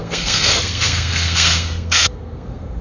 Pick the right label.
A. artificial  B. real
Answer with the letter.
A